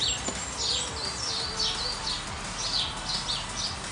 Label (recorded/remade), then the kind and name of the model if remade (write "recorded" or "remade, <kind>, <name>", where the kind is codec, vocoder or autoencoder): recorded